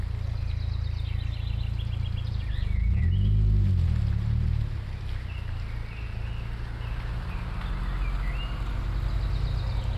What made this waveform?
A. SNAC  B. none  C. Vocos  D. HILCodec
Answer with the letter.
B